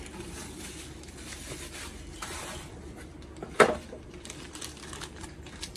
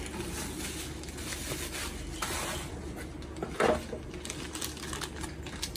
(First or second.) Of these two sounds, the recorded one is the second